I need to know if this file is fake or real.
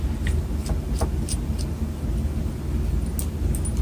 real